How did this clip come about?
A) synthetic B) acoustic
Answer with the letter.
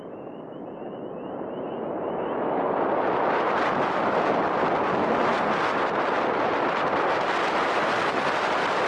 B